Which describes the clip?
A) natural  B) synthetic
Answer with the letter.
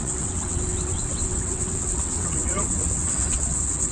B